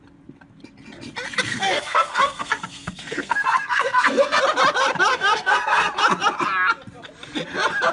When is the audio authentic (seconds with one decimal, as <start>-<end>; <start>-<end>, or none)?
0.0-1.5; 4.4-5.1; 5.9-7.9